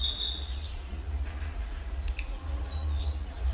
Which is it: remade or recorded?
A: remade